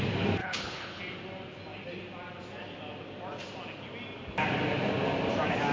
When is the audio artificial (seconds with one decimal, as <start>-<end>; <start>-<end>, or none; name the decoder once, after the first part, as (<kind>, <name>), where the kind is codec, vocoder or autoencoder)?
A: 0.4-1.0 (codec, HILCodec)